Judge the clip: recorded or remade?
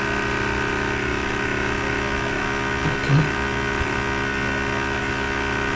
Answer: recorded